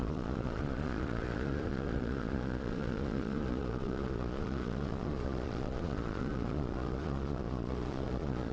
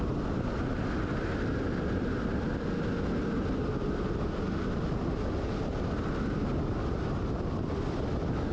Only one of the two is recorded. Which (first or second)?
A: second